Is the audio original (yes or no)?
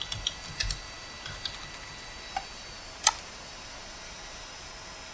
yes